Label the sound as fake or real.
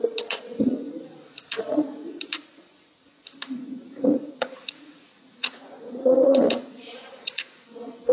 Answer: fake